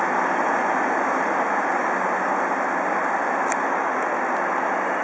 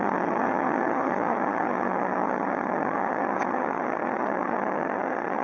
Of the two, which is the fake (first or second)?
second